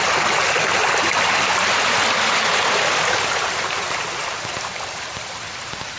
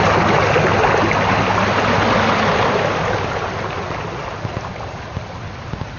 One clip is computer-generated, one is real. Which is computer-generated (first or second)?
first